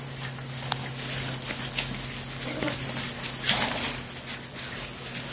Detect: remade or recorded recorded